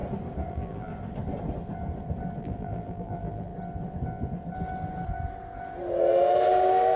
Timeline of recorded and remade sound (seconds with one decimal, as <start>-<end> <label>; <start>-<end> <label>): 0.0-0.5 recorded; 0.5-0.9 remade; 0.9-2.4 recorded; 2.4-3.5 remade; 3.5-7.0 recorded